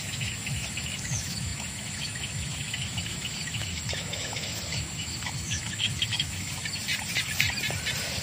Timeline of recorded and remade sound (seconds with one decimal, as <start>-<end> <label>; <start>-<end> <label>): 0.0-6.6 remade; 6.6-8.2 recorded

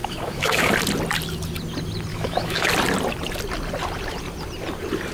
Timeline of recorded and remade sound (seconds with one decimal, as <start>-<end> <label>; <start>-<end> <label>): 0.0-0.7 remade; 0.7-2.1 recorded; 2.1-2.7 remade; 2.7-5.1 recorded

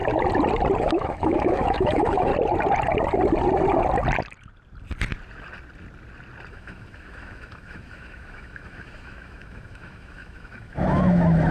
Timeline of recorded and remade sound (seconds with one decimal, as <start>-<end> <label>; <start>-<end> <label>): 0.0-0.8 recorded; 0.8-2.3 remade; 2.3-6.5 recorded; 6.5-11.5 remade

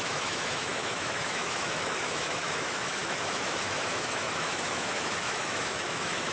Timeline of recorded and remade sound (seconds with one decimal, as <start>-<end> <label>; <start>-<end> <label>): 0.0-6.3 remade

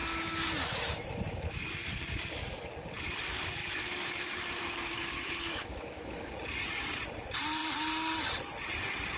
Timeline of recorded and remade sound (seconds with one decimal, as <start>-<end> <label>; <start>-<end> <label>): 0.0-1.6 remade; 1.6-3.6 recorded; 3.6-6.3 remade; 6.3-9.2 recorded